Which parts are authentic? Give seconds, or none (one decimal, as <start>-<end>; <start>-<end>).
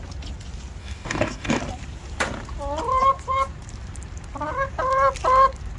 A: 0.0-0.8; 1.6-5.8